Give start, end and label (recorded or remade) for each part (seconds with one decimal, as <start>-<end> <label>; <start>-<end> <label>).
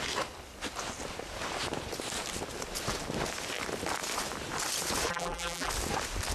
0.0-5.1 recorded; 5.1-5.7 remade; 5.7-6.3 recorded